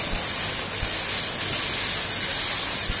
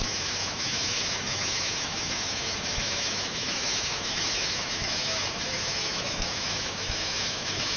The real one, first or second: first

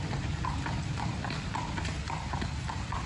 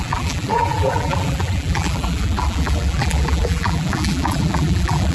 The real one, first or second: first